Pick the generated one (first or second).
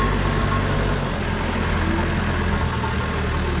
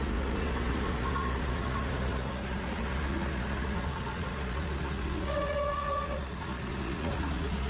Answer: second